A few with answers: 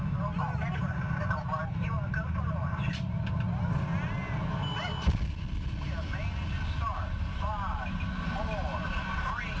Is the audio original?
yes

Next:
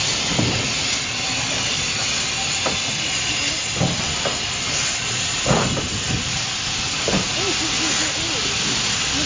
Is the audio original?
yes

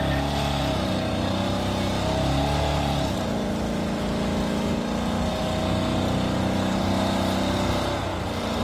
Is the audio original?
yes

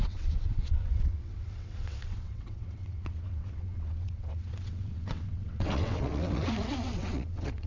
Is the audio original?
no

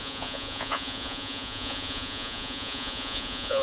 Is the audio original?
no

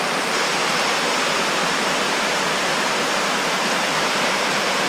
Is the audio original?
no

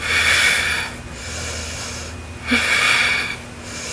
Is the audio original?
yes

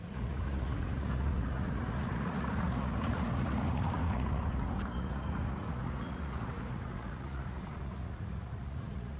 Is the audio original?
no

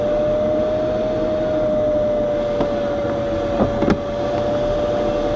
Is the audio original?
yes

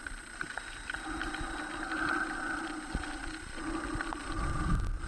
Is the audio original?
yes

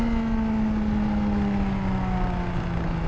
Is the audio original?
yes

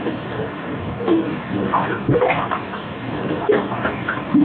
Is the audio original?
no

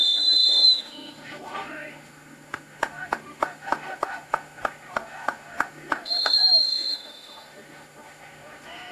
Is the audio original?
no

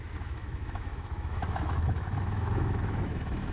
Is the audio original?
no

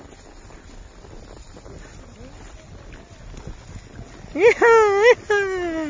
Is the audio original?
yes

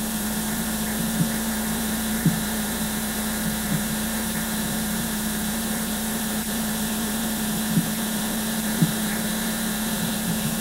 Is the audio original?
no